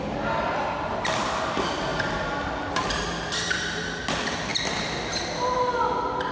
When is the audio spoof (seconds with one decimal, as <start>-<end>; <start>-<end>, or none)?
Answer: none